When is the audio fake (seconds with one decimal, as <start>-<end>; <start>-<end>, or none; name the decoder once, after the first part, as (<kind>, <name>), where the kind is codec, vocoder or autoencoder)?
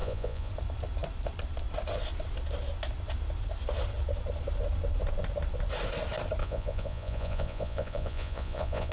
0.0-0.5 (vocoder, Vocos); 6.4-8.9